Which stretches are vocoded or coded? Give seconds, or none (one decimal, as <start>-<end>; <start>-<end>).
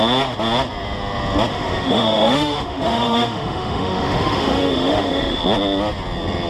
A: 1.5-5.4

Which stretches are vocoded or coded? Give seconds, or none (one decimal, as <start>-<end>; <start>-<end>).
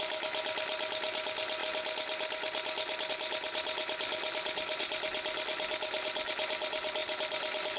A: none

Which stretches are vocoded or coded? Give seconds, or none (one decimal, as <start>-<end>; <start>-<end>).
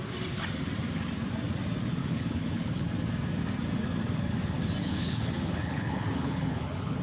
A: 2.0-2.9; 4.8-7.0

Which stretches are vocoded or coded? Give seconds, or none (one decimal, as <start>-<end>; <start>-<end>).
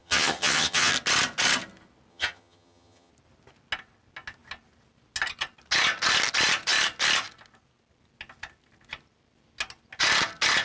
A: 0.0-0.9; 2.1-3.1